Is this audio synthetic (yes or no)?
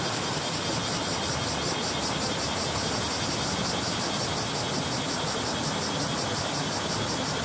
no